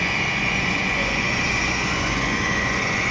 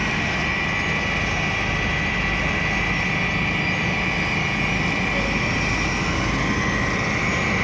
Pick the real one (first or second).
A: second